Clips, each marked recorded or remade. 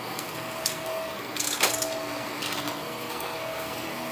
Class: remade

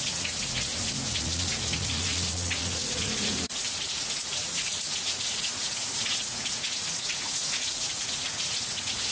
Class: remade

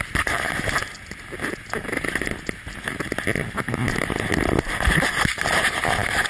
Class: recorded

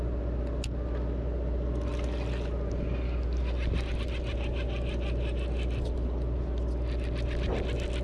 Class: recorded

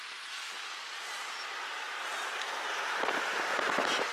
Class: recorded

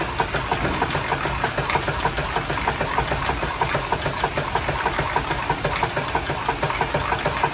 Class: recorded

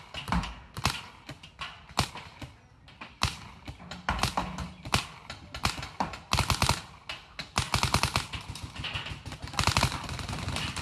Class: recorded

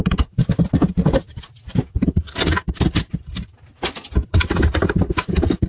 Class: recorded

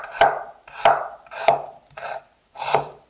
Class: remade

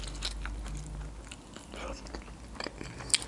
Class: recorded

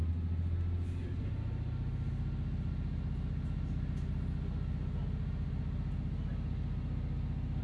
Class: recorded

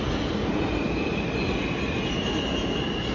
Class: recorded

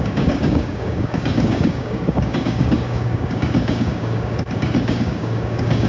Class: remade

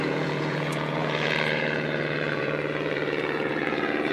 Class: remade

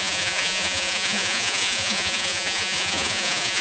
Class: remade